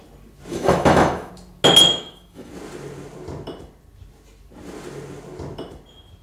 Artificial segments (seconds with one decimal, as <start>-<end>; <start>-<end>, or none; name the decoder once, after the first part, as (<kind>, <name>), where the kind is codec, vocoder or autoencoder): 0.5-1.3 (autoencoder, DAC-VAE); 1.9-2.5